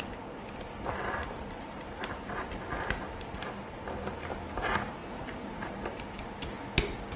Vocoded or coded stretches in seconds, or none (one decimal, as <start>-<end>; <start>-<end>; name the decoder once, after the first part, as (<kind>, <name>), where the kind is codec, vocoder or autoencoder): 1.2-2.7 (vocoder, BigVGAN v2); 5.0-5.7